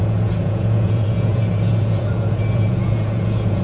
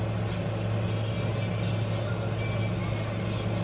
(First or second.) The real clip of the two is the second